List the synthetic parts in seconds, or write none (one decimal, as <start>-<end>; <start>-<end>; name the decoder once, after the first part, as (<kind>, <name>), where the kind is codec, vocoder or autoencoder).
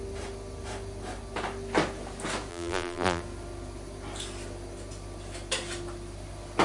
2.5-3.2 (vocoder, BigVGAN v2)